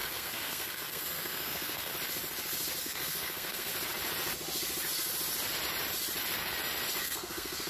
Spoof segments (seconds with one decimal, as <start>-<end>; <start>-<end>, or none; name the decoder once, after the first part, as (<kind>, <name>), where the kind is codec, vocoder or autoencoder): 0.0-1.9 (codec, SNAC); 2.8-3.7; 7.0-7.7